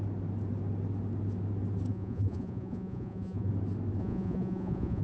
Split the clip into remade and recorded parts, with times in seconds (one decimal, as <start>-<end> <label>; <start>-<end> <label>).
0.0-1.9 recorded; 1.9-3.5 remade; 3.5-4.0 recorded; 4.0-5.0 remade